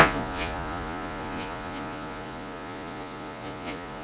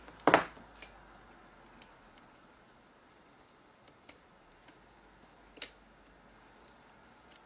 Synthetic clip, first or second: first